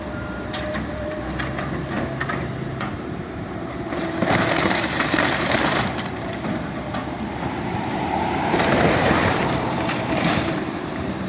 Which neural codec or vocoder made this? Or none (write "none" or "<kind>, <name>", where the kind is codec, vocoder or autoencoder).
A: vocoder, BigVGAN v2